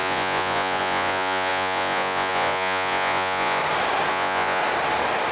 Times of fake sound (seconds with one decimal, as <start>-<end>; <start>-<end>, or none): 0.0-3.6; 4.1-4.6